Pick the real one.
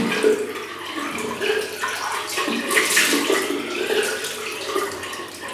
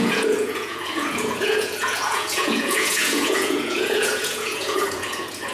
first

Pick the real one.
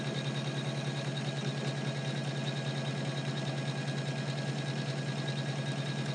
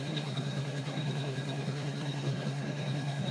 first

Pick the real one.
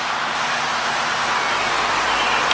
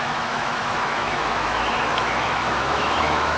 first